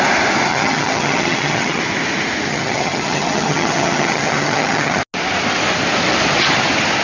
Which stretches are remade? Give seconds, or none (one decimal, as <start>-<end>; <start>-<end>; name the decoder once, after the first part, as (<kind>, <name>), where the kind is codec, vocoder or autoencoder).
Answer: 0.5-1.8 (vocoder, HiFi-GAN); 2.5-5.0